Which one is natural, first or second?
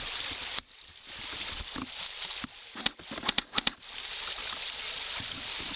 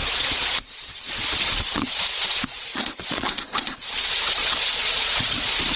first